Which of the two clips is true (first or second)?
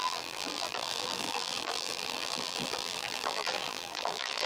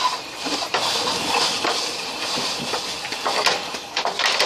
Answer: second